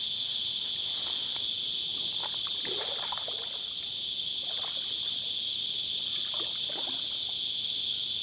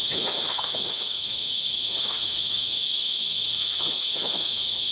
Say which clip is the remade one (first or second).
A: second